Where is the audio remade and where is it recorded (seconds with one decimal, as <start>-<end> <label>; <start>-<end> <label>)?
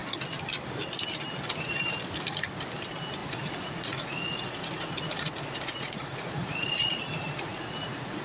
0.0-3.2 recorded; 3.2-8.2 remade